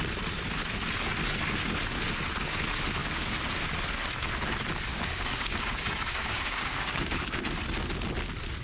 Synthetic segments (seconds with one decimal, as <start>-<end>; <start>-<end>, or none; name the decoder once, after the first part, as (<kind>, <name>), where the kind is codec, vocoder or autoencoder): 3.0-3.5 (codec, DAC); 4.9-7.4